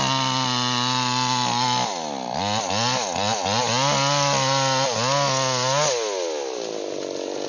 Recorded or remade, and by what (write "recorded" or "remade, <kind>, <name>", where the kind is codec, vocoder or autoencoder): recorded